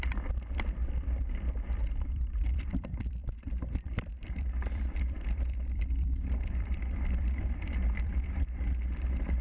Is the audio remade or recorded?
remade